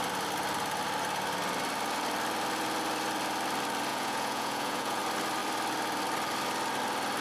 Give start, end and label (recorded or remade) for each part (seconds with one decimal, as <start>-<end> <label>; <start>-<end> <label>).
0.0-3.9 recorded; 3.9-5.0 remade; 5.0-7.2 recorded